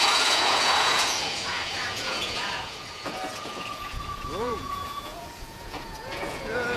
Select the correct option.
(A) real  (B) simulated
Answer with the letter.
B